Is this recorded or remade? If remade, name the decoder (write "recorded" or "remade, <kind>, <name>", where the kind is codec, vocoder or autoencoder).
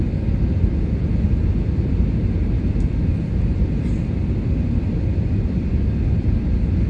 recorded